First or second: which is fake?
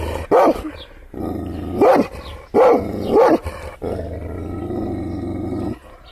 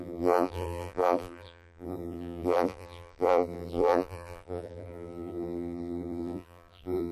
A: second